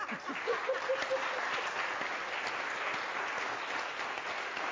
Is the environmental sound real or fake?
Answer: real